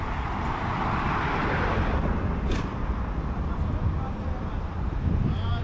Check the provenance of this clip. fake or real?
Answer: fake